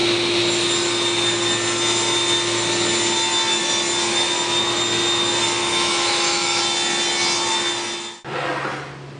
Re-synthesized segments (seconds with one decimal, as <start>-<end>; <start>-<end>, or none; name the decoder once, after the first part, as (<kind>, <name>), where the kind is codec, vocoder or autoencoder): 5.6-6.6 (autoencoder, DAC-VAE)